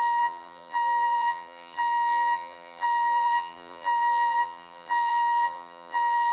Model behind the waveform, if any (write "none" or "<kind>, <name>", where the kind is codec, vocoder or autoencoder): vocoder, BigVGAN v2